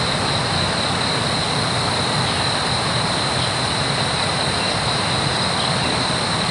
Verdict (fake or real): real